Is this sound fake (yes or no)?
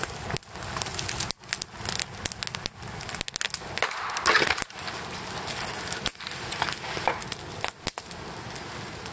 no